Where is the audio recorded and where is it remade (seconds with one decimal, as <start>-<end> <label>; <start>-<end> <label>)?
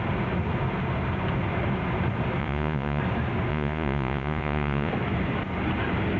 0.0-2.4 recorded; 2.4-3.0 remade; 3.0-3.5 recorded; 3.5-4.9 remade; 4.9-6.2 recorded